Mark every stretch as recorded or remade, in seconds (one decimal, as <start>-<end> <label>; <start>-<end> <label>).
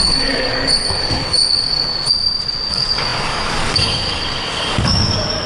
0.0-1.9 remade; 1.9-2.7 recorded; 2.7-5.5 remade